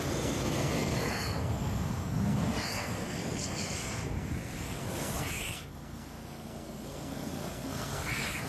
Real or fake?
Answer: fake